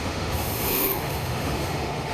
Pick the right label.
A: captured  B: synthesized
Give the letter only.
B